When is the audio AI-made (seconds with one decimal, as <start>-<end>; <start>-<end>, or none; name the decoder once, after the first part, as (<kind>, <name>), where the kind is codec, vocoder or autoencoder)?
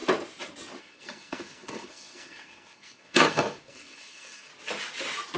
0.8-4.5 (codec, SNAC)